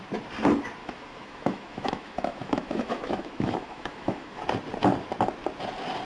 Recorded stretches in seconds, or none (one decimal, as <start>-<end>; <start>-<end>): 0.0-0.8; 4.4-6.0